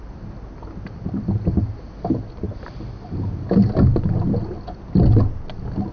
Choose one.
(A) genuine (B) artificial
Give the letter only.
A